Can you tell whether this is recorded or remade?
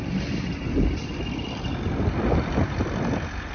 recorded